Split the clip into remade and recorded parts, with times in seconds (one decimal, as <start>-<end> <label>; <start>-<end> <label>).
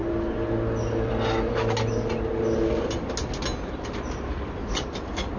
0.0-5.4 recorded